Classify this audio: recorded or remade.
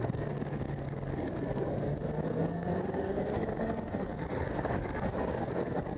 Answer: remade